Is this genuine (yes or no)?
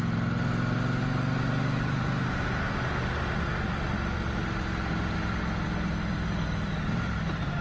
yes